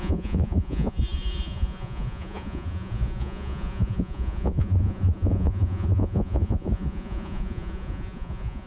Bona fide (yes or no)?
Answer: no